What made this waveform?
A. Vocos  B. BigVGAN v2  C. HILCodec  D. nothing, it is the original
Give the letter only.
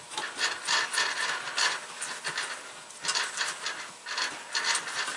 D